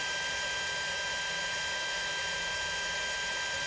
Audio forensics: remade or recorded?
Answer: recorded